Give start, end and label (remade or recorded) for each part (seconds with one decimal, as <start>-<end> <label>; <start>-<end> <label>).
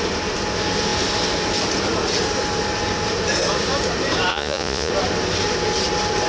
0.0-4.3 recorded; 4.3-4.9 remade; 4.9-6.3 recorded